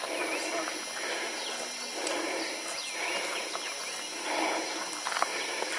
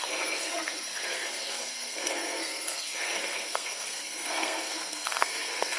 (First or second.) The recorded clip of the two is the first